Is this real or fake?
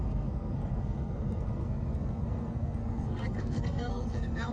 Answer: fake